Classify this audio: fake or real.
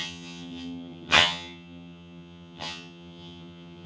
fake